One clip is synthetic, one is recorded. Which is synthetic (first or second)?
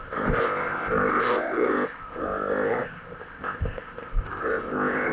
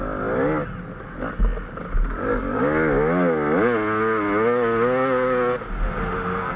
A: first